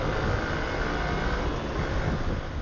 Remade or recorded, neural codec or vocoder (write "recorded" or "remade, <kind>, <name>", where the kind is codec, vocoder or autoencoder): recorded